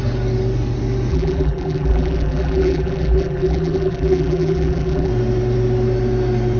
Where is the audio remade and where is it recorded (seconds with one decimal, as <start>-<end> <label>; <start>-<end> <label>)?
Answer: 0.0-1.1 recorded; 1.1-5.1 remade; 5.1-6.6 recorded